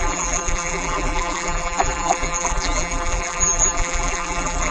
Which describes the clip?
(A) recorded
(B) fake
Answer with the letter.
B